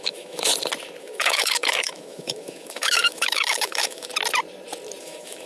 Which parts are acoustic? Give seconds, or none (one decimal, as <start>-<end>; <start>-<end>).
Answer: 0.5-1.0; 4.1-5.0